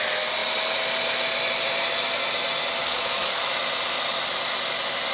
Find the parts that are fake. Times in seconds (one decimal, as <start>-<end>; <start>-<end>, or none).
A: 2.8-3.4